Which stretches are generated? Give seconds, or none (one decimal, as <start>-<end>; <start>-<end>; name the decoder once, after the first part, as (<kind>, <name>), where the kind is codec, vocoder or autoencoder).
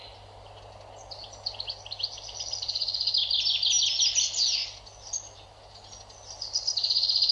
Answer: none